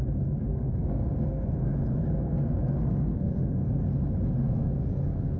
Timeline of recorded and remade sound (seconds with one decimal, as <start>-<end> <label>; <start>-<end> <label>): 0.0-0.5 recorded; 0.5-3.7 remade; 3.7-4.4 recorded; 4.4-5.4 remade